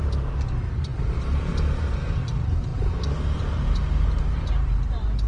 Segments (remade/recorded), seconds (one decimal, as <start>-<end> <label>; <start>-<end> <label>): 0.0-5.3 remade